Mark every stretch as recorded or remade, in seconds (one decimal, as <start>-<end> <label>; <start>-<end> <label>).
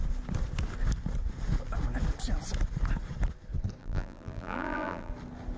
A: 0.0-3.8 recorded; 3.8-5.1 remade; 5.1-5.6 recorded